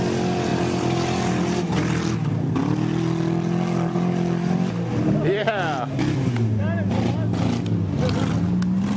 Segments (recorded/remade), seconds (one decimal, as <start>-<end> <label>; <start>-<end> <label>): 0.0-9.0 recorded